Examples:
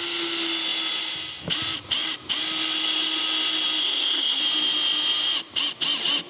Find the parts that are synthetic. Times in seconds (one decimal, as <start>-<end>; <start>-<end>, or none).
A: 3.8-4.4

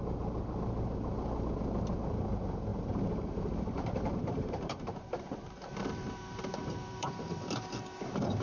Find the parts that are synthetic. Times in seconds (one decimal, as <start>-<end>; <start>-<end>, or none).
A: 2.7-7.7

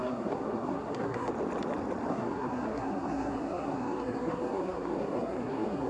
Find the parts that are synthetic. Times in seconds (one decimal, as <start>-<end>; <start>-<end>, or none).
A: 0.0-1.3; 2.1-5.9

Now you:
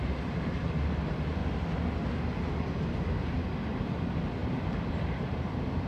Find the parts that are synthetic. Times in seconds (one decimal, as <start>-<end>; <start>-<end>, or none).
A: 0.0-1.4; 3.8-5.9